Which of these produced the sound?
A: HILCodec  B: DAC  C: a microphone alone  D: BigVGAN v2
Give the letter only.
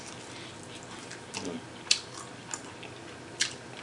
C